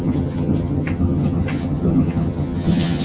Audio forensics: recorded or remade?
remade